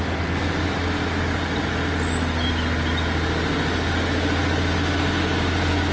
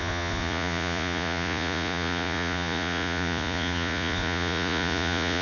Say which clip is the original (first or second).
first